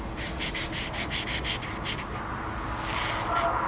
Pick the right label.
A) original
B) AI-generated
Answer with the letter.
A